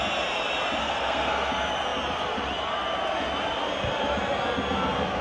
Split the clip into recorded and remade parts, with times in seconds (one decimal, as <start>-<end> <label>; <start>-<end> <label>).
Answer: 0.0-0.8 recorded; 0.8-1.5 remade; 1.5-5.2 recorded

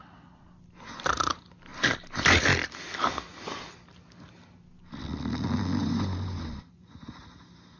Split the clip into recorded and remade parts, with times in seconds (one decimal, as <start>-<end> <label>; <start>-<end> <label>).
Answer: 0.0-5.8 recorded; 5.8-7.2 remade; 7.2-7.8 recorded

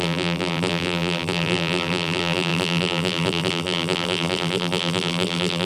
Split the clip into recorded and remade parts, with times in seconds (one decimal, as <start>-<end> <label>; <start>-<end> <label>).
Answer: 0.0-5.6 remade

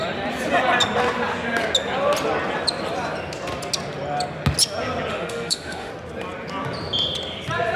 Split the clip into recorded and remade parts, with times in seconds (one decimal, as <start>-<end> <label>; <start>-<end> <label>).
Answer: 0.0-5.1 recorded; 5.1-5.9 remade; 5.9-7.8 recorded

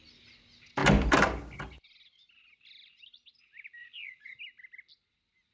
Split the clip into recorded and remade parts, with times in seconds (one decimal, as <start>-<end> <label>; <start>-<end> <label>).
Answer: 0.0-3.8 recorded; 3.8-4.4 remade; 4.4-5.5 recorded

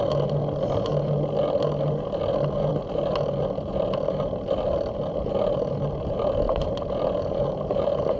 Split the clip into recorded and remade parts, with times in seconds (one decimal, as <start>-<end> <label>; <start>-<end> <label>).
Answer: 0.0-8.2 recorded

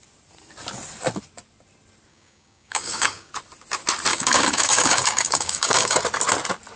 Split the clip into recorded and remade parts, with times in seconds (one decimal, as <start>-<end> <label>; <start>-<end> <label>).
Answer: 0.0-2.1 recorded; 2.1-3.3 remade; 3.3-4.1 recorded; 4.1-6.0 remade; 6.0-6.8 recorded

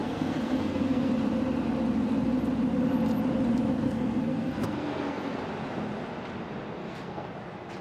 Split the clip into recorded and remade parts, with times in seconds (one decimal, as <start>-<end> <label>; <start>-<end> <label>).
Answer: 0.0-1.1 remade; 1.1-3.7 recorded; 3.7-5.4 remade; 5.4-6.8 recorded; 6.8-7.3 remade; 7.3-7.8 recorded